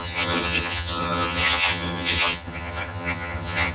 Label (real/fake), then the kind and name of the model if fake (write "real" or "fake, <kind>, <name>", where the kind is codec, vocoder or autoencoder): fake, vocoder, HiFi-GAN